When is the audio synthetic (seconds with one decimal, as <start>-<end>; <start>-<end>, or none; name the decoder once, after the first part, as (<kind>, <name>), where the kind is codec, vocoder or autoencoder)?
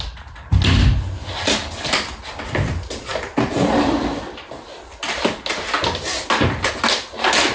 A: none